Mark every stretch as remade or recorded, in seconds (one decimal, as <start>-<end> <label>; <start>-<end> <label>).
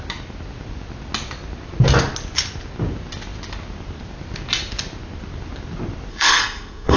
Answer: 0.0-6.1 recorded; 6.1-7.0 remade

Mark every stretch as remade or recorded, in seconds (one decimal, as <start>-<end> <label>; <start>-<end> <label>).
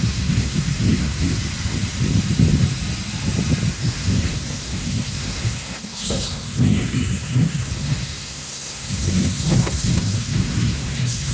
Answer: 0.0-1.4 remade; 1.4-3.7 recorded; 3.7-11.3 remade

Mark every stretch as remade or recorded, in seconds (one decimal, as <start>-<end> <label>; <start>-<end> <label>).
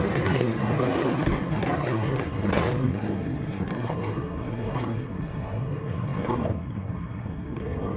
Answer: 0.0-8.0 remade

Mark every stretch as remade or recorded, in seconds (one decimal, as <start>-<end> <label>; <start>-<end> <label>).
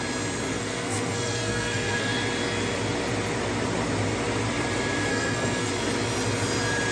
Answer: 0.0-0.5 recorded; 0.5-2.1 remade; 2.1-5.1 recorded; 5.1-5.7 remade; 5.7-6.9 recorded